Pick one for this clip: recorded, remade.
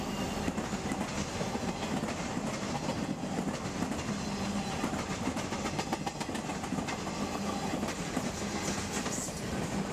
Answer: recorded